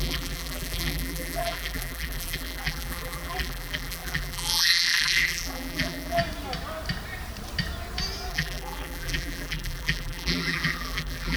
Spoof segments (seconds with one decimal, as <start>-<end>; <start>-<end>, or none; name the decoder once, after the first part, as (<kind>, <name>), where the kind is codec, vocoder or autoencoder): 0.0-6.2 (vocoder, BigVGAN v2); 8.3-11.4